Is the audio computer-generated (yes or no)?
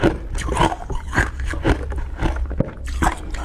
no